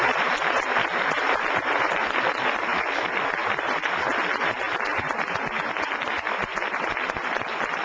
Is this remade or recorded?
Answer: recorded